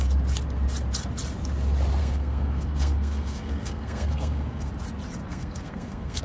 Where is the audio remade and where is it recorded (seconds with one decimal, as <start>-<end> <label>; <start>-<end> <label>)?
0.0-2.0 recorded; 2.0-4.7 remade; 4.7-5.2 recorded; 5.2-6.2 remade